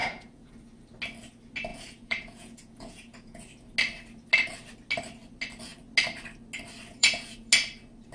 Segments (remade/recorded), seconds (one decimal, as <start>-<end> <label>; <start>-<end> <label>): 0.0-0.5 remade; 0.5-1.7 recorded; 1.7-3.4 remade; 3.4-6.9 recorded; 6.9-7.5 remade; 7.5-8.1 recorded